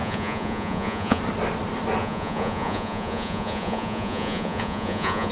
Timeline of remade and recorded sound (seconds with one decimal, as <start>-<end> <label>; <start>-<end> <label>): 0.0-1.2 remade; 1.2-2.0 recorded; 2.0-5.3 remade